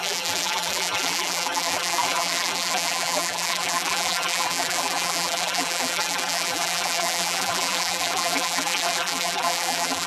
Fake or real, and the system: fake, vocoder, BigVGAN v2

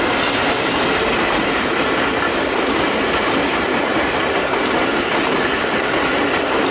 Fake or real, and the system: real